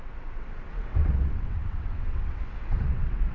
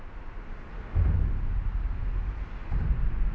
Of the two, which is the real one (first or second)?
second